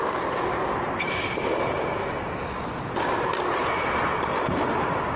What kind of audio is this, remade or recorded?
recorded